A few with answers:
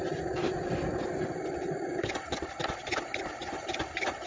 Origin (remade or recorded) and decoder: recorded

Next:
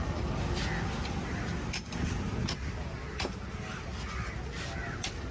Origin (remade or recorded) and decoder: recorded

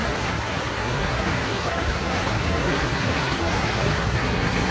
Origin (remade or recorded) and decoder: remade, codec, SNAC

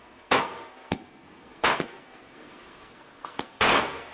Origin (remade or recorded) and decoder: remade, codec, SNAC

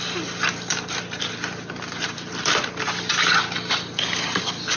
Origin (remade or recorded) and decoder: recorded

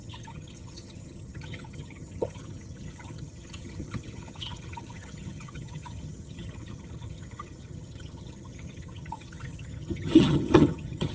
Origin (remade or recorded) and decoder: remade, vocoder, HiFi-GAN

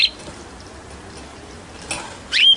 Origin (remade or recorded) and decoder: recorded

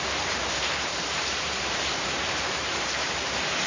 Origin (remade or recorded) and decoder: remade, vocoder, BigVGAN v2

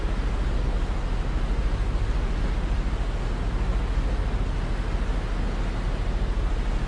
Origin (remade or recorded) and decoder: recorded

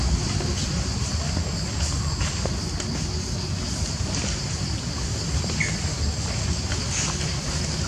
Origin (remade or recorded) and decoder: recorded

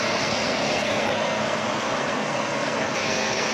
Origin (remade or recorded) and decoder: remade, codec, SNAC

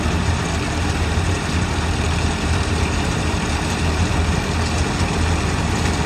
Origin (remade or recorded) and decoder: remade, vocoder, BigVGAN v2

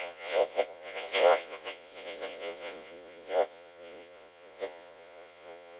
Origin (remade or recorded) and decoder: remade, vocoder, Vocos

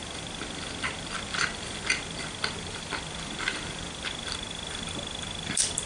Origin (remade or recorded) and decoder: remade, vocoder, BigVGAN v2